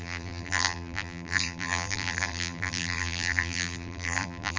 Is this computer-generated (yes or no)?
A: yes